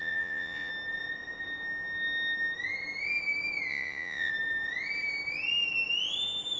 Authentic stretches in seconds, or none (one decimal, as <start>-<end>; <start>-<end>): 0.7-3.7; 4.3-6.6